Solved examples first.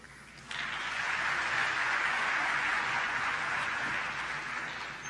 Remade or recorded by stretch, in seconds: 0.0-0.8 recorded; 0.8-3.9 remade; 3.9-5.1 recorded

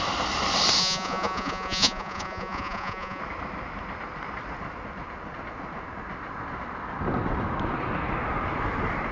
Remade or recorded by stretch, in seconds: 0.0-0.8 recorded; 0.8-3.2 remade; 3.2-9.1 recorded